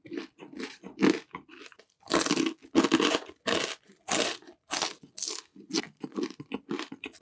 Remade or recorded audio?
recorded